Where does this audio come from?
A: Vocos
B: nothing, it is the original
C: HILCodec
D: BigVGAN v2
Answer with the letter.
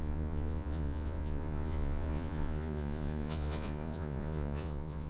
A